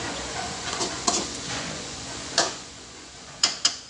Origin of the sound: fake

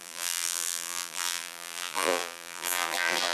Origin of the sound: fake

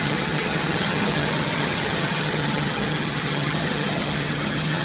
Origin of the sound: fake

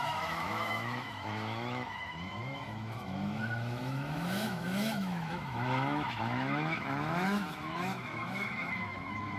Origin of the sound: fake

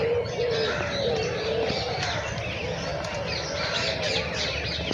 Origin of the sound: real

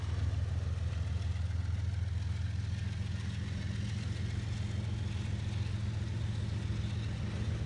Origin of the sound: real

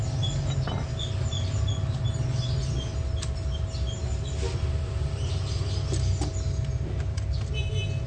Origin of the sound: real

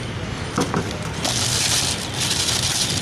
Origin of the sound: real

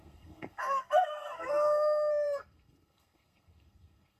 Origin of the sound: fake